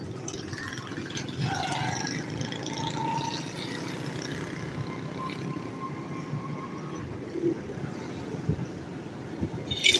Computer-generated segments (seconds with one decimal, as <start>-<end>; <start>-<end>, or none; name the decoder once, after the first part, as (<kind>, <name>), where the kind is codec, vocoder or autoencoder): none